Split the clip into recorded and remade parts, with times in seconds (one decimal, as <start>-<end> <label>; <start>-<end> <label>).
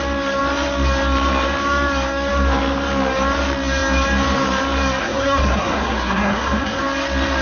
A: 0.0-5.0 recorded; 5.0-6.8 remade; 6.8-7.4 recorded